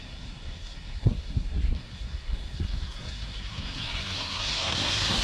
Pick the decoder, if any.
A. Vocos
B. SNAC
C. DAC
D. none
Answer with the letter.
B